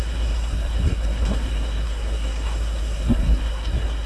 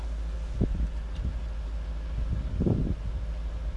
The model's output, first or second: first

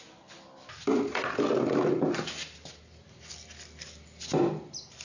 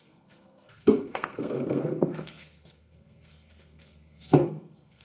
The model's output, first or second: second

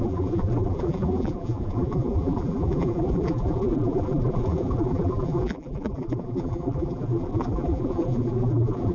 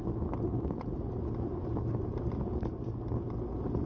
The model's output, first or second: first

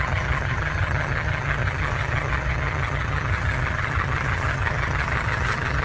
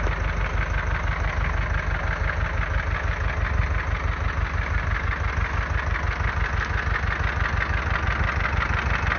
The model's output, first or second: first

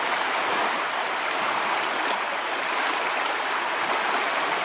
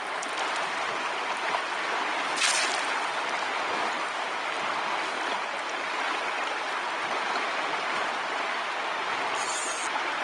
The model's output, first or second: first